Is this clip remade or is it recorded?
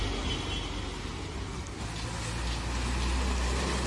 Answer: recorded